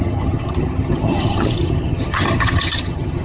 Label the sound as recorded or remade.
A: remade